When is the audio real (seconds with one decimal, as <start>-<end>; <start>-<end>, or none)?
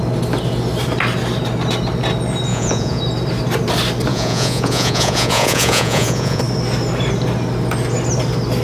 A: 0.0-2.5; 3.0-4.1; 6.4-8.6